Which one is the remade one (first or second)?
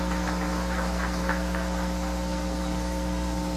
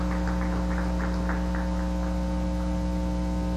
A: first